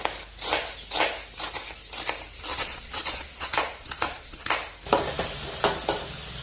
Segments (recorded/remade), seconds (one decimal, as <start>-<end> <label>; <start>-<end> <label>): 0.0-2.5 recorded; 2.5-4.5 remade; 4.5-6.4 recorded